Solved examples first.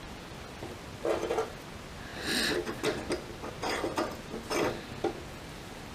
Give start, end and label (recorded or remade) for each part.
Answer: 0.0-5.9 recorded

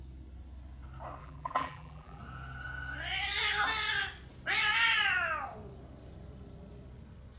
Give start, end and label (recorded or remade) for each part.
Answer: 0.0-1.2 recorded; 1.2-2.2 remade; 2.2-7.4 recorded

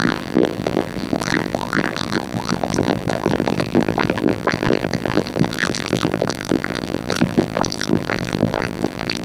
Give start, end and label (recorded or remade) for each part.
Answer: 0.0-9.2 remade